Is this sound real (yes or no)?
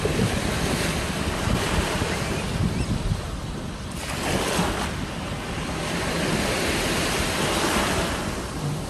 yes